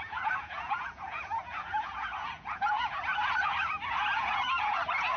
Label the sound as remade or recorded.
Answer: remade